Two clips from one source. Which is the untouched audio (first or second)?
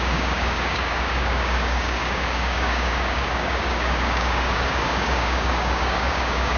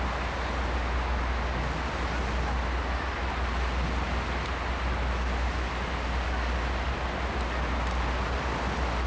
second